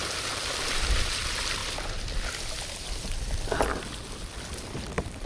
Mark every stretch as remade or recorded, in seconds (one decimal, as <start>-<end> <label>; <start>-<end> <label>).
0.0-1.6 remade; 1.6-4.8 recorded; 4.8-5.3 remade